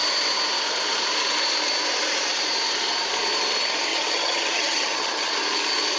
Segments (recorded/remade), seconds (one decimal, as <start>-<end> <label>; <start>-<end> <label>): 0.0-3.9 recorded; 3.9-5.3 remade; 5.3-6.0 recorded